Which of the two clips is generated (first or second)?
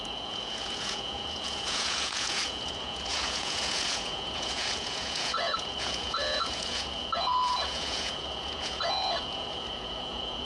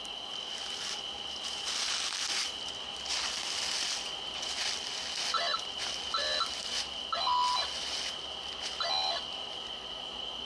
first